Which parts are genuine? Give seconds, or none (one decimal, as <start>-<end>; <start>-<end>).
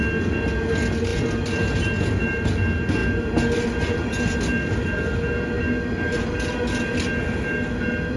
0.0-8.2